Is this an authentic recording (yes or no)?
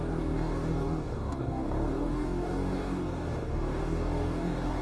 no